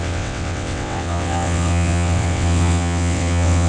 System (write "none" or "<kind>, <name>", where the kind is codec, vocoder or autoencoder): vocoder, WaveNeXt